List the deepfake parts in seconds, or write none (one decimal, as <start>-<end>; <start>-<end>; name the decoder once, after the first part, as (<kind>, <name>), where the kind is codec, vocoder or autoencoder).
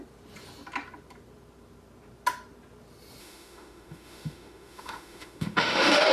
3.2-6.1 (autoencoder, DAC-VAE)